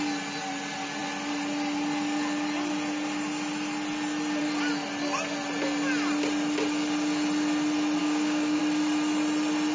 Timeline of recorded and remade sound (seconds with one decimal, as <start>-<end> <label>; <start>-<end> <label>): 0.0-8.0 recorded; 8.0-8.6 remade; 8.6-9.7 recorded